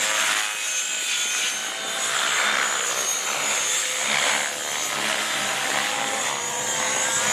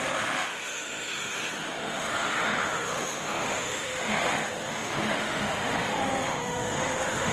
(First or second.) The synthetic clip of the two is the second